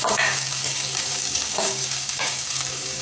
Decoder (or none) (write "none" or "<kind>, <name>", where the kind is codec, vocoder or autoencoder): codec, DAC